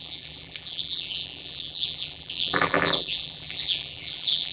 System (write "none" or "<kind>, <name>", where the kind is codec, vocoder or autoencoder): vocoder, BigVGAN v2